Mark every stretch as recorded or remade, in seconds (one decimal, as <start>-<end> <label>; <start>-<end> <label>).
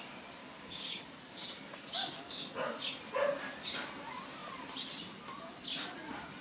0.0-0.4 recorded; 0.4-1.0 remade; 1.0-2.0 recorded; 2.0-2.8 remade; 2.8-6.4 recorded